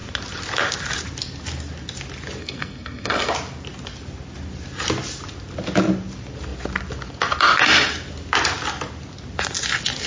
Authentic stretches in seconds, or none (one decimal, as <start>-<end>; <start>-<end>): 0.0-2.4; 3.3-10.1